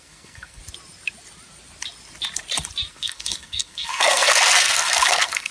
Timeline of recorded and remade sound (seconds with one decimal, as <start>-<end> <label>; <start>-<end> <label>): 0.0-0.6 remade; 0.6-2.9 recorded; 2.9-5.5 remade